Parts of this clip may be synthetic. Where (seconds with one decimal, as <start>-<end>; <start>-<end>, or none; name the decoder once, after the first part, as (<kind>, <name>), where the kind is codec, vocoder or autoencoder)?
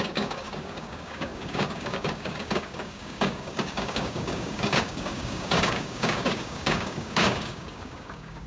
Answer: 0.0-8.5 (codec, DAC)